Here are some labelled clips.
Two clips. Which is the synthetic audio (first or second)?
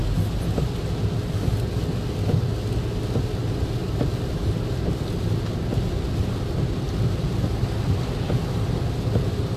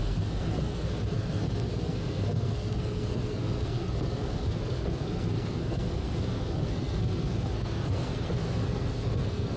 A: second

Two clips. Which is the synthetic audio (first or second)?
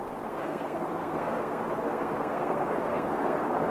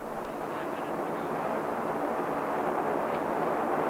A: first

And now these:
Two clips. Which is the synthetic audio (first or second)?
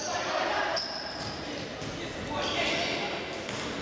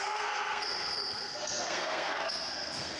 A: second